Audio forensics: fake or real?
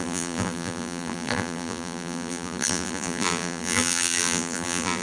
fake